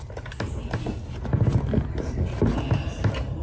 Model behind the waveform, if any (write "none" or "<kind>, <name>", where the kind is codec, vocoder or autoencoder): none